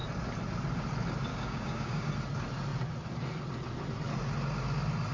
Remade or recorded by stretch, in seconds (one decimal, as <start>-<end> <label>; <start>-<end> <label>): 0.0-1.3 recorded; 1.3-2.1 remade; 2.1-5.1 recorded